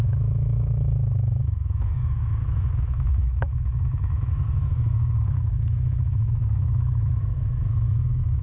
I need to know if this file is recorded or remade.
remade